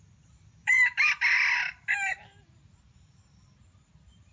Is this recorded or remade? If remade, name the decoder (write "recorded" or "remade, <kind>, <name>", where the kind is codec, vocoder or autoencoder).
remade, vocoder, BigVGAN v2